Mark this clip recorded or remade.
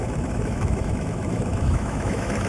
remade